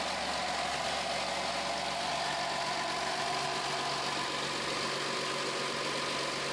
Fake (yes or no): no